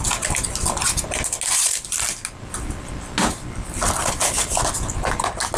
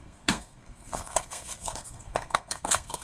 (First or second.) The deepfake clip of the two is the second